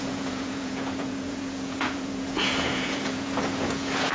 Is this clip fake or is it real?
fake